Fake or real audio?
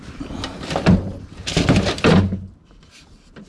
real